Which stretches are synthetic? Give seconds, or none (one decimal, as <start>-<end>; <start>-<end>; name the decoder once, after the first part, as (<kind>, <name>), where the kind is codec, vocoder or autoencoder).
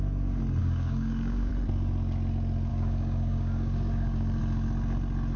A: 0.6-1.5 (codec, DAC); 2.7-4.4